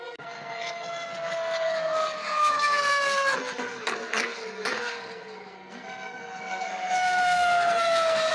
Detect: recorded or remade remade